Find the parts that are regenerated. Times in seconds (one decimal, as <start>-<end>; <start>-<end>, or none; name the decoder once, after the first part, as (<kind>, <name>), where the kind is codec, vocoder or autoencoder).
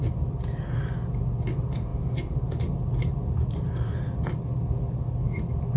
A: 1.9-3.9 (vocoder, BigVGAN v2)